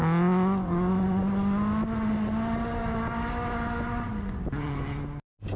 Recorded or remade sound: recorded